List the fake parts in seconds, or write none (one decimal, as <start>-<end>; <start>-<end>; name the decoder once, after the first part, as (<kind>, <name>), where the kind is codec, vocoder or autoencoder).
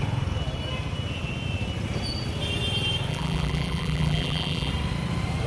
3.1-4.7 (vocoder, BigVGAN v2)